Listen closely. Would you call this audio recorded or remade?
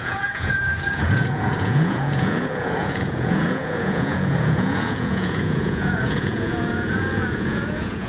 remade